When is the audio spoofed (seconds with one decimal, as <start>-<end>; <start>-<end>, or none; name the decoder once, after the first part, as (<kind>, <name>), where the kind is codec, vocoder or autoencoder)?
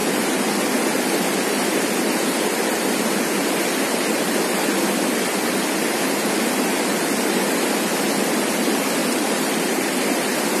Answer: 9.0-9.8 (vocoder, BigVGAN v2)